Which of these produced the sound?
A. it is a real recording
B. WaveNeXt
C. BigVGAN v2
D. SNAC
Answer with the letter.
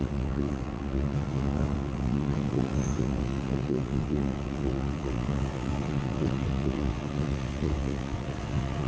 B